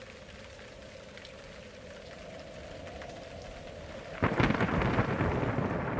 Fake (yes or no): no